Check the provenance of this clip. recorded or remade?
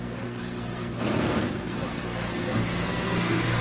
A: remade